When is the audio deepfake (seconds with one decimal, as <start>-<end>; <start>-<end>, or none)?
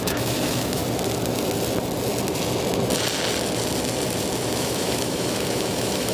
0.0-0.8; 4.5-6.1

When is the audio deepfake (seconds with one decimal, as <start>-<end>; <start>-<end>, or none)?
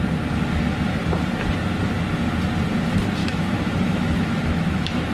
3.2-5.1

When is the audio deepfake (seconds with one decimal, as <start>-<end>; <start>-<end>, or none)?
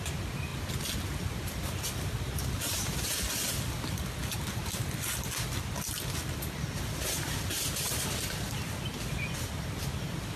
none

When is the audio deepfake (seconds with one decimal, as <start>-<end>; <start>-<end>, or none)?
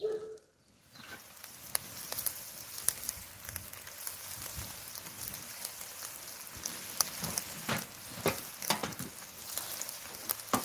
none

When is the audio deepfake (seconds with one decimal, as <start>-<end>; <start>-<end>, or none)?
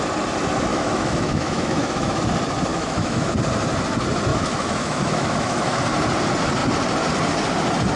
0.7-2.2; 2.7-3.3; 4.3-5.8